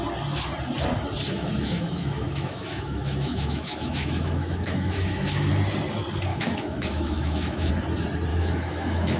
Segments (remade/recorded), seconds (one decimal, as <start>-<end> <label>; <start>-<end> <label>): 0.0-1.3 recorded; 1.3-5.5 remade; 5.5-6.3 recorded; 6.3-7.7 remade; 7.7-8.3 recorded; 8.3-9.2 remade